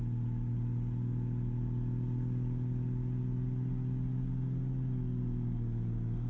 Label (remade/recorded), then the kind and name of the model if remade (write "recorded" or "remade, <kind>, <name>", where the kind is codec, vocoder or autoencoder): recorded